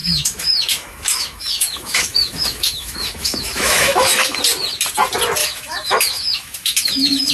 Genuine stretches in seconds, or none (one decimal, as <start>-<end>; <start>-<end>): 4.4-5.4